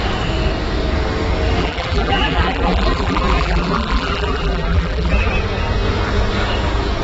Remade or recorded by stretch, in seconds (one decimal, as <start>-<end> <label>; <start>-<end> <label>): 0.0-1.6 recorded; 1.6-5.3 remade; 5.3-7.0 recorded